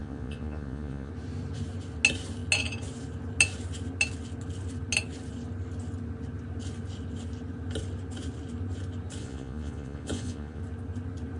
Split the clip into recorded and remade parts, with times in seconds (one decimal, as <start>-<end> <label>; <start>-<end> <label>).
0.0-1.1 remade; 1.1-9.2 recorded; 9.2-10.6 remade; 10.6-11.4 recorded